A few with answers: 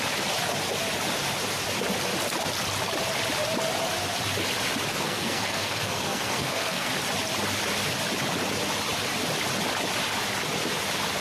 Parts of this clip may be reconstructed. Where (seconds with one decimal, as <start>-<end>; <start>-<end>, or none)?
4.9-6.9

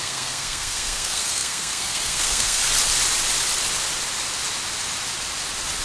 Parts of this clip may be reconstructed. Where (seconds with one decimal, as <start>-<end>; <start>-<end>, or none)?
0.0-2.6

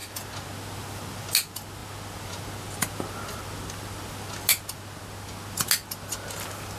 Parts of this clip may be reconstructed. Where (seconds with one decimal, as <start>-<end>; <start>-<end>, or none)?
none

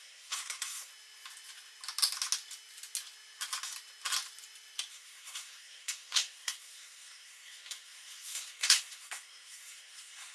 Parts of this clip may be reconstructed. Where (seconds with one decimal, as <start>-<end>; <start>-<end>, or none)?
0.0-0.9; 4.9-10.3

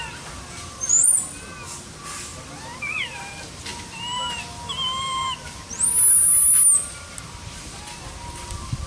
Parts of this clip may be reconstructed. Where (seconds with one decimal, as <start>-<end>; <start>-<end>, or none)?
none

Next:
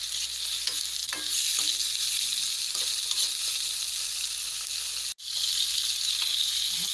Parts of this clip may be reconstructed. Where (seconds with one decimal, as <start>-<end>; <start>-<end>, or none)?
none